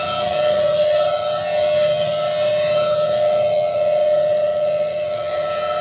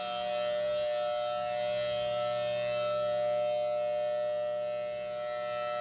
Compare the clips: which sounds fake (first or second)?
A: first